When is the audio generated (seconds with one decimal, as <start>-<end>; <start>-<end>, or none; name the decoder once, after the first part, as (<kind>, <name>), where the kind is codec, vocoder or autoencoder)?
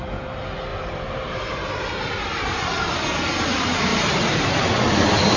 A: 0.7-2.9 (vocoder, BigVGAN v2); 3.9-4.6